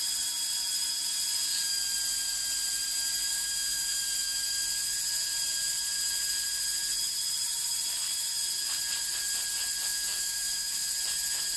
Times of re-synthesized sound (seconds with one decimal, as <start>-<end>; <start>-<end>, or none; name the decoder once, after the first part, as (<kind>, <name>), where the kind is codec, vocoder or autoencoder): 3.3-4.0 (autoencoder, DAC-VAE); 9.9-11.0